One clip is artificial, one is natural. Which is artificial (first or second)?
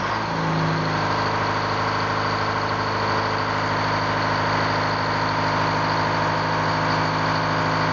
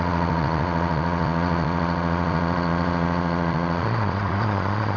second